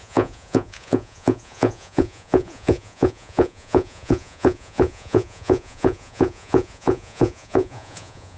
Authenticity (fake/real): fake